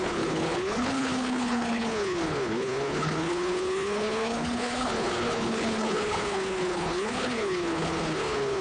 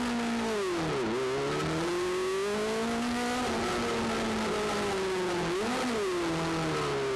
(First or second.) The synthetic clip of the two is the first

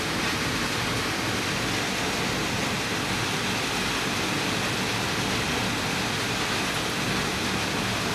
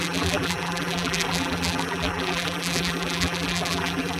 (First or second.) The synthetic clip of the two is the second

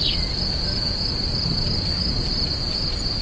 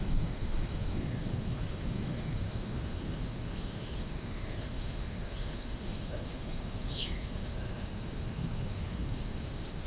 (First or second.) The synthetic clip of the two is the second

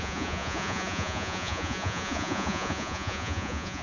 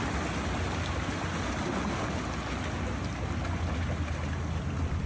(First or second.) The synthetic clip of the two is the first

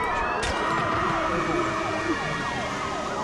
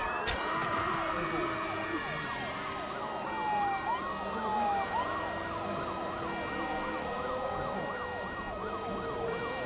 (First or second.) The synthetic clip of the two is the first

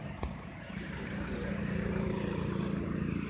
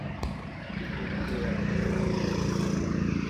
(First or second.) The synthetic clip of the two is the first